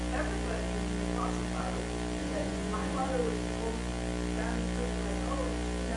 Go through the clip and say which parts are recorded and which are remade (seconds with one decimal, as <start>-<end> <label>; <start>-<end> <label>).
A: 0.0-2.2 recorded; 2.2-3.1 remade; 3.1-6.0 recorded